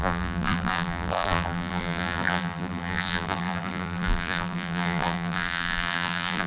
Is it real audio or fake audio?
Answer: fake